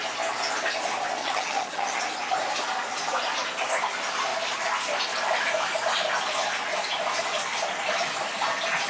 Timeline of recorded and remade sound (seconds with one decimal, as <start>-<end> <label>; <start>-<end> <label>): 0.0-1.2 recorded; 1.2-2.0 remade; 2.0-8.9 recorded